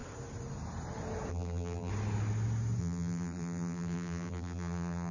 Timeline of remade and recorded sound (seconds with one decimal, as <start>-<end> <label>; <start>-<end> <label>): 0.0-1.3 recorded; 1.3-1.9 remade; 1.9-2.8 recorded; 2.8-5.1 remade